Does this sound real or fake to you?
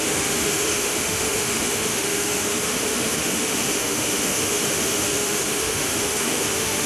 fake